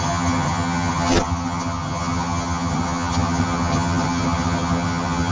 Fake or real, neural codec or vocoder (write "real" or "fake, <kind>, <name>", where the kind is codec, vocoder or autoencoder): fake, vocoder, HiFi-GAN